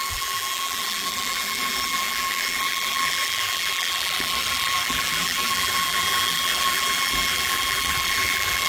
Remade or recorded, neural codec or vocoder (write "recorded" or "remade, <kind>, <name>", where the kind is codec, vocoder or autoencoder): remade, vocoder, BigVGAN v2